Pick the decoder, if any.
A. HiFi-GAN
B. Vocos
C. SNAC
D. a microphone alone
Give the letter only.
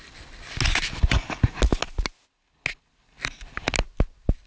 D